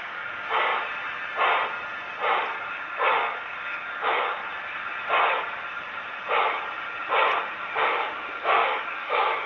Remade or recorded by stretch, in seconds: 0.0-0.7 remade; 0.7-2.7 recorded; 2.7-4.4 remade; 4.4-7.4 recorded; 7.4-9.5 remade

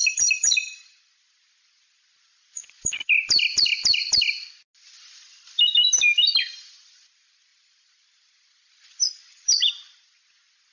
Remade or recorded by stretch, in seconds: 0.0-1.1 remade; 1.1-7.5 recorded; 7.5-9.7 remade; 9.7-10.7 recorded

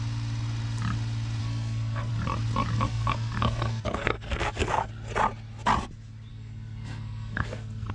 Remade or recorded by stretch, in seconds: 0.0-1.4 recorded; 1.4-2.1 remade; 2.1-2.7 recorded; 2.7-4.9 remade; 4.9-6.3 recorded; 6.3-7.9 remade

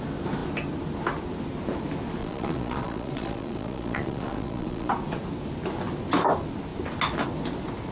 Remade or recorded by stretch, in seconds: 0.0-2.2 recorded; 2.2-4.9 remade; 4.9-7.9 recorded